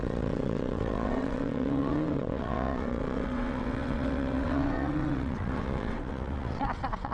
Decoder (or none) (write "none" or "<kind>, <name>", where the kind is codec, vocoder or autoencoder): vocoder, WaveNeXt